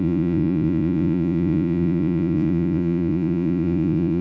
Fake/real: fake